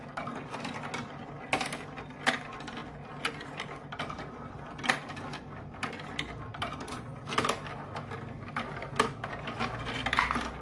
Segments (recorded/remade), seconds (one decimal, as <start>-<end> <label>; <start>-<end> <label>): 0.0-10.6 recorded